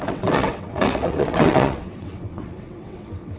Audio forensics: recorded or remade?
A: remade